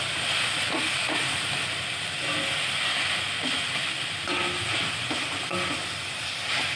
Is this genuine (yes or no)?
yes